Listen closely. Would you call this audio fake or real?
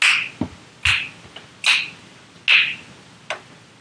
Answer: real